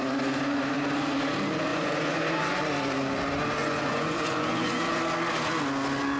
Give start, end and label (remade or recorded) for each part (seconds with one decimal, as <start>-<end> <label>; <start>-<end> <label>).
0.0-1.7 recorded; 1.7-2.6 remade; 2.6-3.6 recorded; 3.6-5.0 remade; 5.0-6.2 recorded